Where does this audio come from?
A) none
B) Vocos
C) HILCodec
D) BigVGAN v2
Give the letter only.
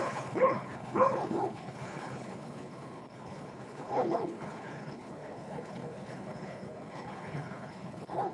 C